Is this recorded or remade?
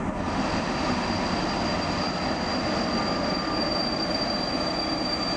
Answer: recorded